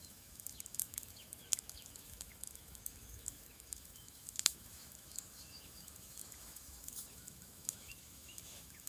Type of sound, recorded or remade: remade